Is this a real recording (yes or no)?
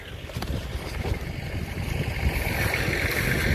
no